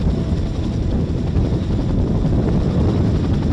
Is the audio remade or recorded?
recorded